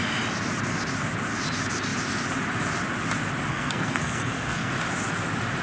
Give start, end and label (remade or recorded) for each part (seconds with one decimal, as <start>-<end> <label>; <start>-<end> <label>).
0.0-3.5 recorded; 3.5-4.7 remade; 4.7-5.6 recorded